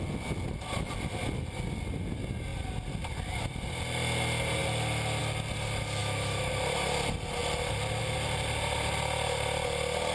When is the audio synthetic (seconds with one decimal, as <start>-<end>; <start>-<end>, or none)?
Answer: 6.0-6.5